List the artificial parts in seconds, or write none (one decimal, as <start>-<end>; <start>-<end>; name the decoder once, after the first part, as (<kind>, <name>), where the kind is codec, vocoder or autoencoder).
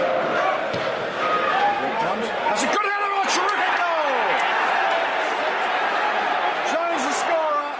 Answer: none